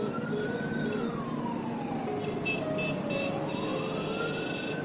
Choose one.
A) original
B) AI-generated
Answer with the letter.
A